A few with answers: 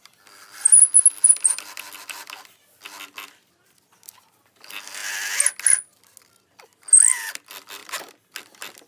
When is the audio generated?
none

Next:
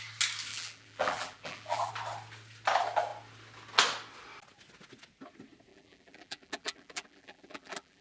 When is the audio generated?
0.5-1.9 (vocoder, BigVGAN v2); 5.7-8.0

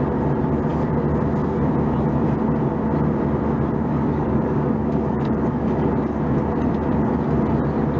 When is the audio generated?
3.8-5.9 (codec, DAC)

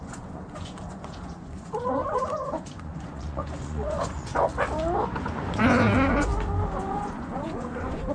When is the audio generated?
0.0-4.3 (vocoder, Vocos); 5.2-6.3; 6.8-8.1

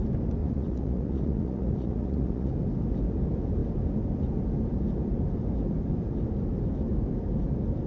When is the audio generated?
0.4-2.5 (vocoder, Vocos)

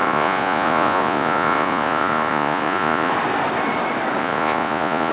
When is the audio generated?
0.0-3.1 (vocoder, Vocos); 4.2-5.1